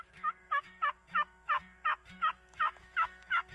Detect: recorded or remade remade